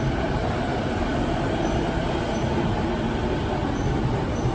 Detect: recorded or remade recorded